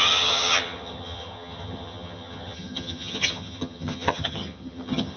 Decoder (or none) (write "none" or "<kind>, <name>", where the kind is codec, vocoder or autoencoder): vocoder, HiFi-GAN